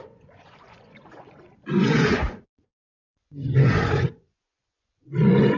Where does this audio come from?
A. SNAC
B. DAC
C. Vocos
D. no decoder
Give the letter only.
C